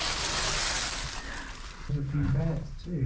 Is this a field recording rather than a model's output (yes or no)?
yes